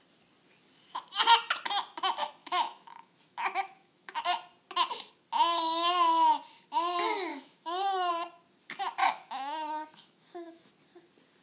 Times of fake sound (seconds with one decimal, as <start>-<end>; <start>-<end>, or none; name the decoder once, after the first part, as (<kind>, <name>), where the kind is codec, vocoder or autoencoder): 2.4-4.2 (autoencoder, DAC-VAE); 7.3-8.1; 9.0-10.7